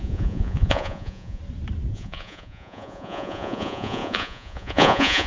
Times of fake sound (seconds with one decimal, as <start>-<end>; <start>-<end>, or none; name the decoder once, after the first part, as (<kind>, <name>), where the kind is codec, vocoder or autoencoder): 0.0-1.4 (vocoder, Vocos); 1.9-5.3